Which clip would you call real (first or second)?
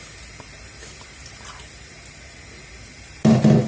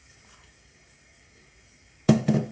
first